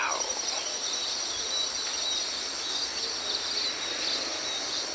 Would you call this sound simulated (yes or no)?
no